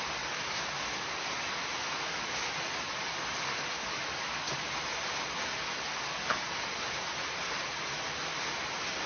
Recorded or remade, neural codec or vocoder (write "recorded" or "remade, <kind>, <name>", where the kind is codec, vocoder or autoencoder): recorded